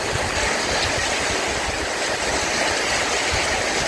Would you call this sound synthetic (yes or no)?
no